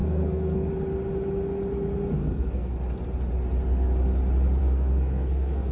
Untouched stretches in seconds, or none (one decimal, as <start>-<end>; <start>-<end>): 0.7-2.2; 2.7-4.6